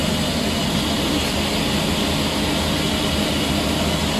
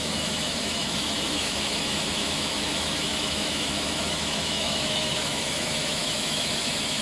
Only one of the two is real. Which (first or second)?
first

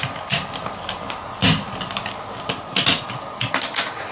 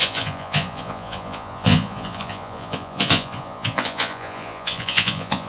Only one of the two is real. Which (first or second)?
first